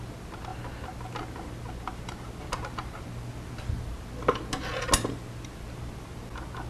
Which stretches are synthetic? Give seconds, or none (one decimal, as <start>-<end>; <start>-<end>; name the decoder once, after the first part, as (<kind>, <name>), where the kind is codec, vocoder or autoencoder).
none